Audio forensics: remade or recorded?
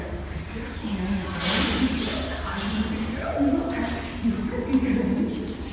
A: recorded